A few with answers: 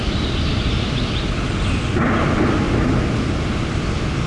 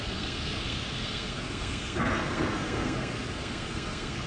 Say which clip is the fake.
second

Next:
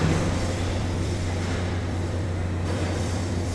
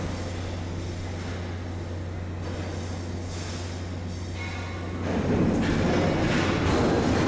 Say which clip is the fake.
first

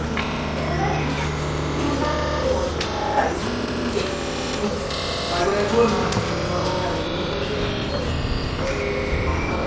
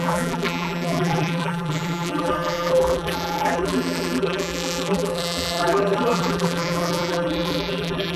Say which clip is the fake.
second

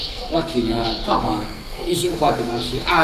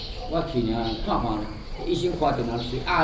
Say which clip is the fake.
first